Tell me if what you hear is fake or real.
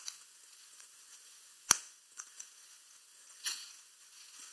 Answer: fake